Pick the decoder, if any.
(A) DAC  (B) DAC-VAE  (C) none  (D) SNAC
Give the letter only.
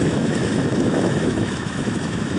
B